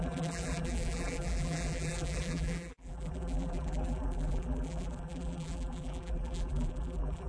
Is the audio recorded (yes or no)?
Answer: no